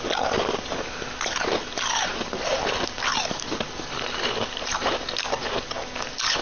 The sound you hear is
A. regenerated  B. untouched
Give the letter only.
B